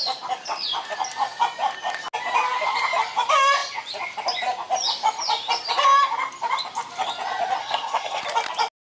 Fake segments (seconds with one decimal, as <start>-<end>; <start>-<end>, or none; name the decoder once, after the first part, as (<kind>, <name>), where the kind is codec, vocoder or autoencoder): 7.6-8.2 (codec, SNAC)